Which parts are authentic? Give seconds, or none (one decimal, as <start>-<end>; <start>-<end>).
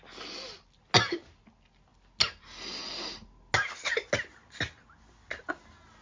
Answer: 0.0-6.0